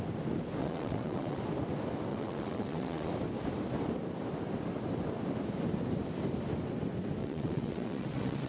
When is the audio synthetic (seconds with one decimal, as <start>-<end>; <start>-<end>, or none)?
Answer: 0.6-1.4; 2.1-3.1; 7.2-8.5